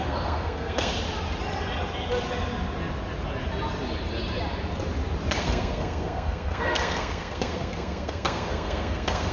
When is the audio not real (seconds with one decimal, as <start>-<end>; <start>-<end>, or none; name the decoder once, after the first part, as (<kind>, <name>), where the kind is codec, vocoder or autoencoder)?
0.0-0.9 (codec, SNAC); 5.4-9.3